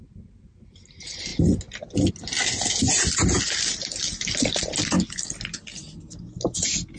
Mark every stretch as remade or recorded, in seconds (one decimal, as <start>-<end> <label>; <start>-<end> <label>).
0.0-7.0 recorded